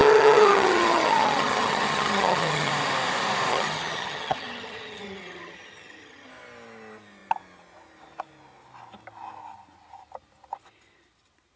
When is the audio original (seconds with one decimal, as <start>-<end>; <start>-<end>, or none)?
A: 2.7-3.5; 6.3-11.6